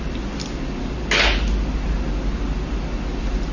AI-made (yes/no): no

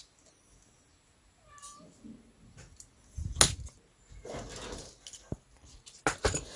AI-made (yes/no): no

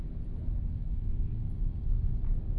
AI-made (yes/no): yes